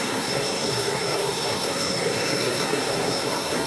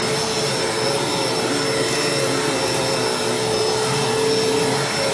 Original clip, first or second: second